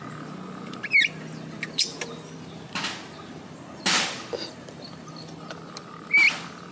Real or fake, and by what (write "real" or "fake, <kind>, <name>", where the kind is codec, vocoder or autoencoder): real